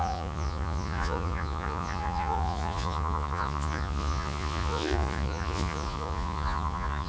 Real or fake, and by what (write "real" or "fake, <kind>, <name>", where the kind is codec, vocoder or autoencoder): fake, vocoder, Vocos